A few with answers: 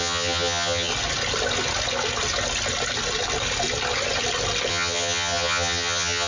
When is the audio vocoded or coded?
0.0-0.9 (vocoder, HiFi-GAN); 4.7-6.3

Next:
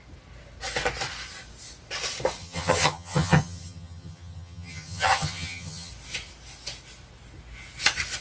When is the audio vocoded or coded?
2.4-5.9 (vocoder, HiFi-GAN)

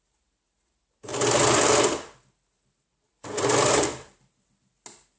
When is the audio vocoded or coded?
none

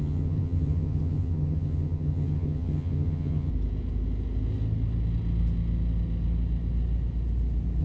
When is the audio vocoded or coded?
0.0-3.5 (vocoder, HiFi-GAN)